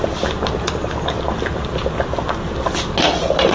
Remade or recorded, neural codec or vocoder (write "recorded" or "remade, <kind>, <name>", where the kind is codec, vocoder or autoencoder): recorded